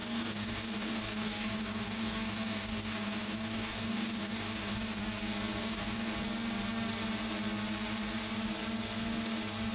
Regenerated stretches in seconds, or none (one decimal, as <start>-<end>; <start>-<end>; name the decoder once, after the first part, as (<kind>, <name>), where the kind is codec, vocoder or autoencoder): 0.0-5.0 (codec, DAC); 5.6-6.1